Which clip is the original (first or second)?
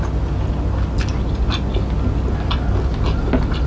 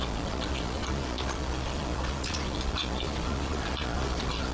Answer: first